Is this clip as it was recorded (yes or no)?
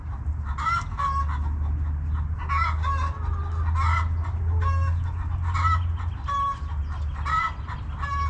yes